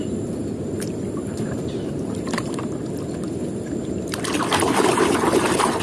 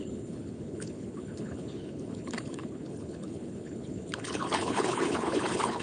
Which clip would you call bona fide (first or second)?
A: first